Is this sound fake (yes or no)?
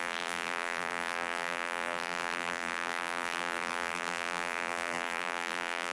yes